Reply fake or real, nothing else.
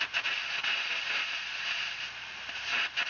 fake